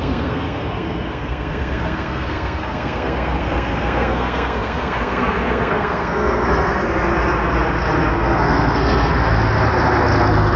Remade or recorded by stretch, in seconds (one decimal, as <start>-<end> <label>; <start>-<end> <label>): 0.0-7.1 remade; 7.1-8.1 recorded; 8.1-9.1 remade; 9.1-10.6 recorded